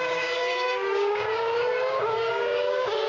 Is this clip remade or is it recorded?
remade